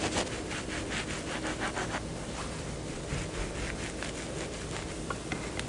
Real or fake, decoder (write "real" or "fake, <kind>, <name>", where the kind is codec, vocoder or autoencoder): real